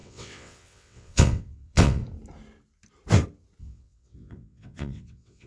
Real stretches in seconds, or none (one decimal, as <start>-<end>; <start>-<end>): 2.0-3.6